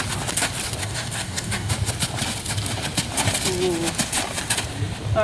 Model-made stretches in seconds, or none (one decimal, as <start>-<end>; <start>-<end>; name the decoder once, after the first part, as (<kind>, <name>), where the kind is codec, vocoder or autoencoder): 0.8-1.7 (codec, DAC)